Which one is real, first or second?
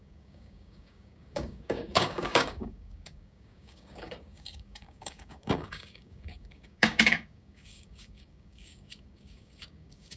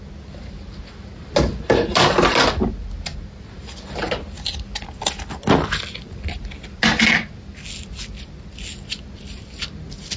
second